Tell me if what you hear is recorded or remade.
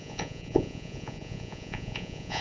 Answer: remade